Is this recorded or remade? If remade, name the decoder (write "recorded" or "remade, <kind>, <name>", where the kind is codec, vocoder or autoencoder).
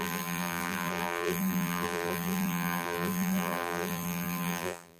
remade, vocoder, BigVGAN v2